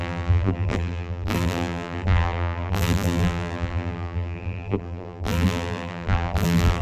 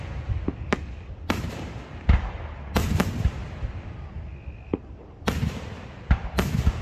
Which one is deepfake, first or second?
first